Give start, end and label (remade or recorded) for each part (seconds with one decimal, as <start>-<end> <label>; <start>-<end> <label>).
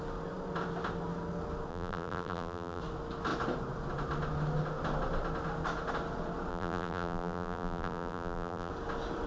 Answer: 0.0-1.7 recorded; 1.7-2.8 remade; 2.8-6.5 recorded; 6.5-8.7 remade; 8.7-9.3 recorded